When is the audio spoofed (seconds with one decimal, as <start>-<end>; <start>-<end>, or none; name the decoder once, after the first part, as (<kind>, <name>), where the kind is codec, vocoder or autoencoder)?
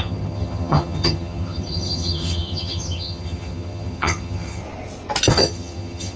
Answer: 0.0-4.6 (vocoder, HiFi-GAN); 5.3-6.2